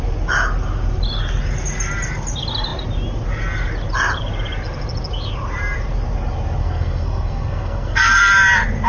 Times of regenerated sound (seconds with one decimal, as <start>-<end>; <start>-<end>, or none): 6.6-8.3